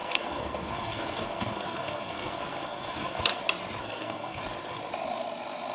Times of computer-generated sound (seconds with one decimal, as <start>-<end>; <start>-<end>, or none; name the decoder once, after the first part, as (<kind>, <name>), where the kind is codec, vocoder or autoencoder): 0.0-3.4 (codec, SNAC); 3.8-4.4